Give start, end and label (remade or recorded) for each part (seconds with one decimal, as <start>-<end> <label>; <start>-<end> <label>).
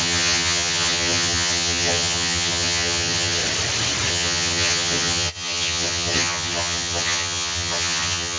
0.0-3.4 remade; 3.4-4.1 recorded; 4.1-8.4 remade